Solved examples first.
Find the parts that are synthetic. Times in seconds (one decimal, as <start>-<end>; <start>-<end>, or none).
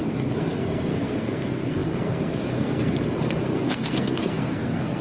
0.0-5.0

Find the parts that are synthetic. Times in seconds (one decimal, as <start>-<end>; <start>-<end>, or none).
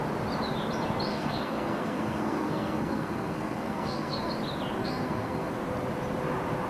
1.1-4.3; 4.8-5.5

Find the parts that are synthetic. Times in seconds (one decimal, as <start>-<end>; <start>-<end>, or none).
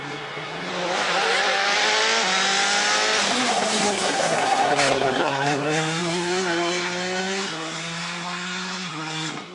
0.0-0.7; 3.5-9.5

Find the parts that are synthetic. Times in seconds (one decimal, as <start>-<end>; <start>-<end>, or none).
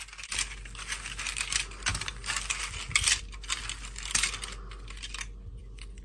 none